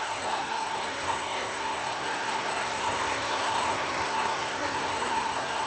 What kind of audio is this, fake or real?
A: fake